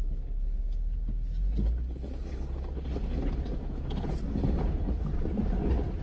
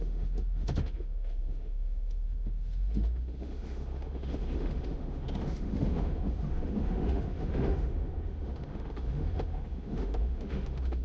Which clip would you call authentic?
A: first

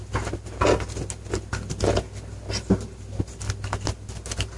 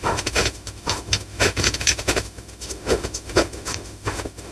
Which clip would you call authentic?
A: first